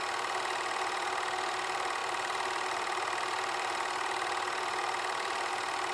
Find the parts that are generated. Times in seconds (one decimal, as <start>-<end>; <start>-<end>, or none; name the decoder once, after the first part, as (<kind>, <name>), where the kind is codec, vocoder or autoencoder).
2.0-5.5 (vocoder, BigVGAN v2)